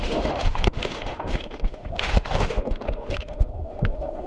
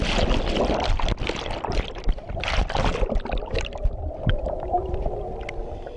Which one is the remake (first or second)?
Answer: first